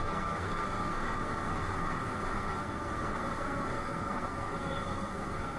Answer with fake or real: fake